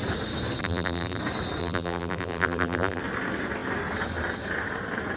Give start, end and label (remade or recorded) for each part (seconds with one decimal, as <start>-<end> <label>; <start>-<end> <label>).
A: 0.0-0.6 recorded; 0.6-1.2 remade; 1.2-1.6 recorded; 1.6-3.0 remade; 3.0-5.2 recorded